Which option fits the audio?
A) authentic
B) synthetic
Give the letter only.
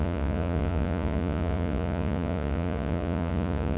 B